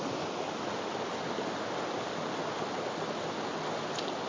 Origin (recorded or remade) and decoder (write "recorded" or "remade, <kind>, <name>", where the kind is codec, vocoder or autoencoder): recorded